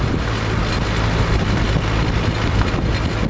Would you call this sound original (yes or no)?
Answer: yes